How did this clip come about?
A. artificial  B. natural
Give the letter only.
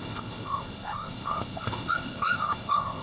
A